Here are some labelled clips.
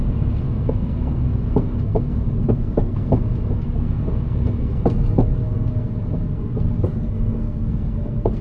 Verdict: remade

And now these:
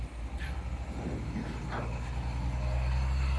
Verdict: recorded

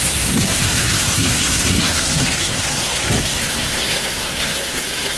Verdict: remade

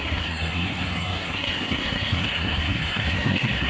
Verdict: remade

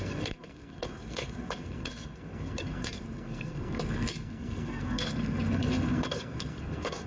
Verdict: remade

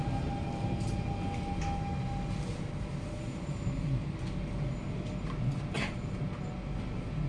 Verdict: recorded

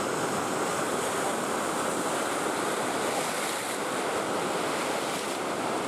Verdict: recorded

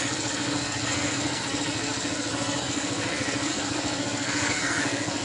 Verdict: remade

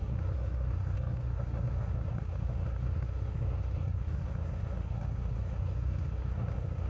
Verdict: remade